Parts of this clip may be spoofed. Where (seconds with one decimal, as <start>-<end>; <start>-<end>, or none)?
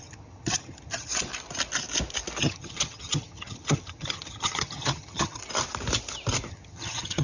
0.0-1.1; 2.4-5.4; 6.5-7.2